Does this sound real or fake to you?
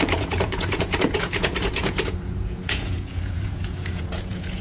fake